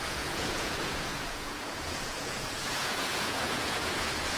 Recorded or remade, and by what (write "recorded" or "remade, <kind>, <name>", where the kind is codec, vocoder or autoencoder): remade, vocoder, Vocos